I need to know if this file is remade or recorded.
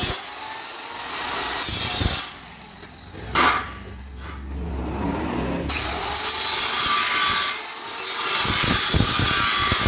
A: recorded